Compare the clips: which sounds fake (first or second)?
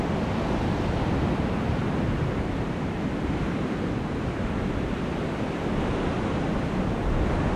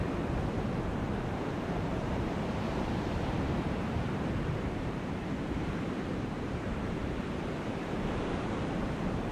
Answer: second